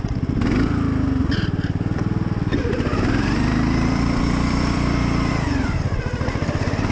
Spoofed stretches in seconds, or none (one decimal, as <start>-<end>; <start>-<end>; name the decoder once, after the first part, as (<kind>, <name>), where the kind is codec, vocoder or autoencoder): 1.2-5.3 (vocoder, BigVGAN v2)